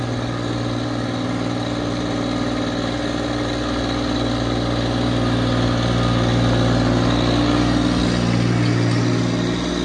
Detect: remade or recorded recorded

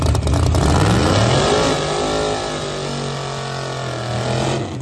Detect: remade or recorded recorded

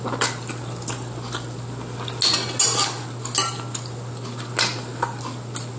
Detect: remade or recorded recorded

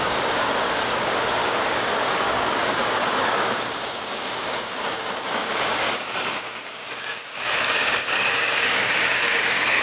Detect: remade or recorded remade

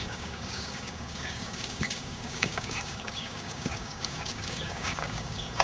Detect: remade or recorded remade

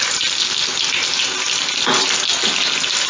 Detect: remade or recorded recorded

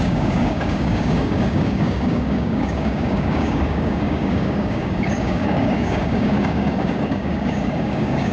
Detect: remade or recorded remade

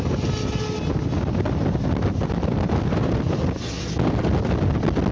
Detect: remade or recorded recorded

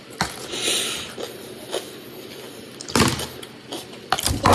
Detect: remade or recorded recorded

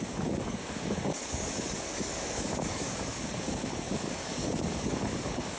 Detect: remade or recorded remade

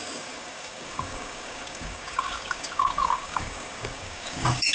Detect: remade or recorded remade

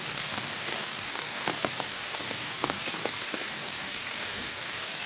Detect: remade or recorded remade